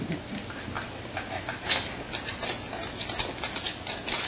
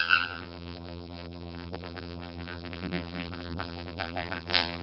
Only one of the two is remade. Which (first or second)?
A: second